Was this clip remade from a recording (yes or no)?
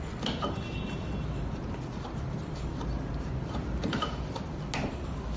no